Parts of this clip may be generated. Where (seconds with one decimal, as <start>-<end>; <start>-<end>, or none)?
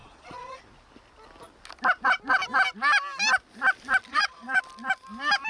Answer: 0.0-0.6; 4.1-4.6